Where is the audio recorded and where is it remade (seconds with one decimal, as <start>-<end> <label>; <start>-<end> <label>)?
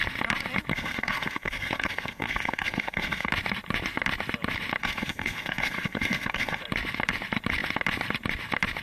0.0-0.7 recorded; 0.7-3.3 remade; 3.3-4.8 recorded; 4.8-6.6 remade; 6.6-8.8 recorded